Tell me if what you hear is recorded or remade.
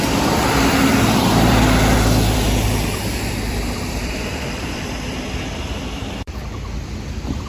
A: remade